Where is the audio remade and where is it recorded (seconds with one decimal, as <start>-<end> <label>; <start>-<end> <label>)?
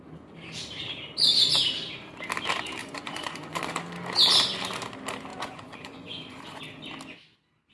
0.0-2.8 recorded; 2.8-3.6 remade; 3.6-5.3 recorded; 5.3-6.6 remade; 6.6-7.7 recorded